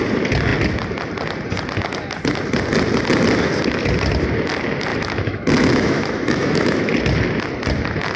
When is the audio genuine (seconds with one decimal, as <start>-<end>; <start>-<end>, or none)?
0.0-4.9; 6.8-8.2